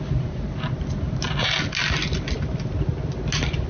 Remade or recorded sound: recorded